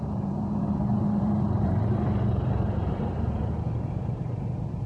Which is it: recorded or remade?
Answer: remade